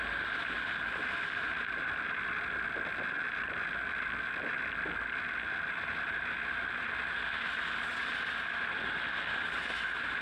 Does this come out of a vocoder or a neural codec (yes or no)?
no